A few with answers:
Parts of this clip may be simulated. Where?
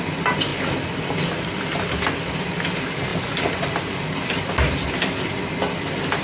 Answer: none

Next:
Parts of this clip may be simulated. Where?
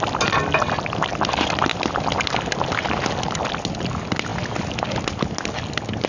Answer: none